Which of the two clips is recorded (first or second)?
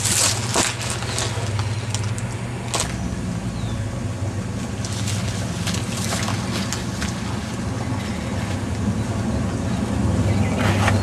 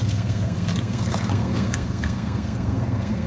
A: first